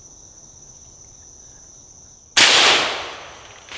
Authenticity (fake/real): real